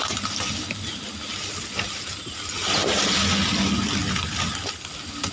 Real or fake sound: real